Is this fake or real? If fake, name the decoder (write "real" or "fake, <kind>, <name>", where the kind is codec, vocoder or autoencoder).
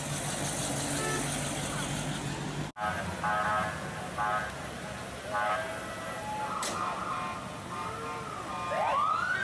real